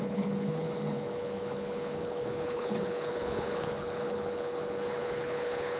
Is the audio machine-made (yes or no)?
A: yes